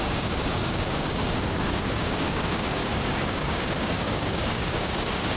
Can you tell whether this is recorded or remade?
remade